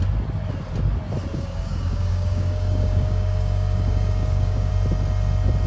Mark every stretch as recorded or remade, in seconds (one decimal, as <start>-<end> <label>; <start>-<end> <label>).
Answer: 0.0-1.3 recorded; 1.3-4.7 remade; 4.7-5.7 recorded